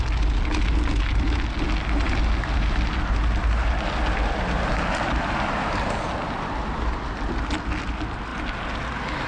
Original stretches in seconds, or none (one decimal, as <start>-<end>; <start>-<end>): 0.0-9.3